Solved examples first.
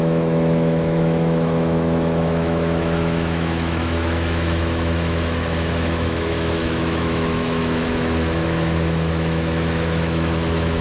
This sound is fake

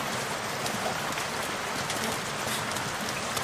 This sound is real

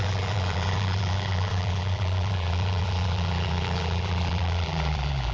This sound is fake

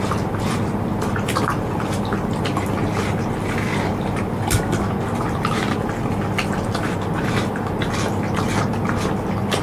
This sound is real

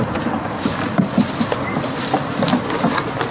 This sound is real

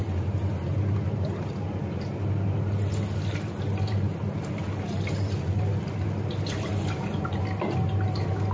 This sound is real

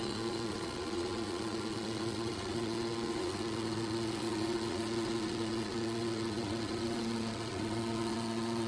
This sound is fake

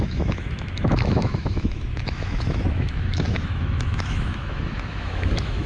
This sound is fake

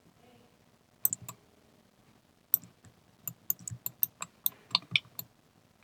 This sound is real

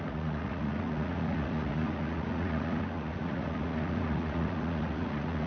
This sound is fake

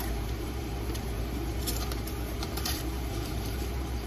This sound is fake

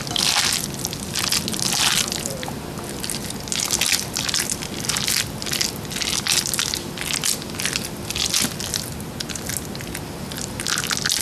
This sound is real